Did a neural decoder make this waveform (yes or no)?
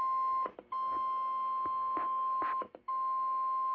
no